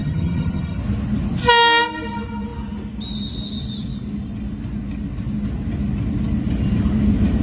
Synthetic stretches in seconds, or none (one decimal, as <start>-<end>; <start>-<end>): 0.0-0.8